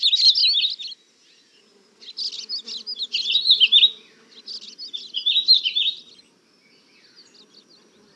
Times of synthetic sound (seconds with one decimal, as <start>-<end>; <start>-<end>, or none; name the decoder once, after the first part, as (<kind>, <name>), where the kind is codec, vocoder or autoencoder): 5.4-6.9 (vocoder, BigVGAN v2)